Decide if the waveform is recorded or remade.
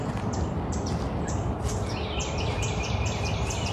remade